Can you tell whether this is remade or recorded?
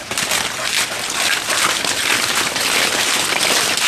recorded